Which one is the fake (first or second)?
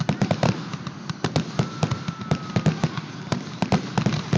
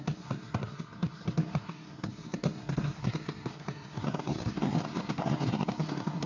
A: second